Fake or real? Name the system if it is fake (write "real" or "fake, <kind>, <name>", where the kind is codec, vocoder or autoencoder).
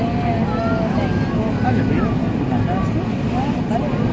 real